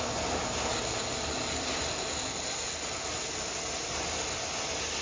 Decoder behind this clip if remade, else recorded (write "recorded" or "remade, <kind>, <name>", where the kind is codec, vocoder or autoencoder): recorded